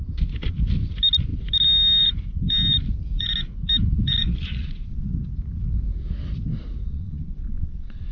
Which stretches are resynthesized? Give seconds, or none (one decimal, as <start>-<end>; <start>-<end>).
4.2-5.0; 6.8-8.1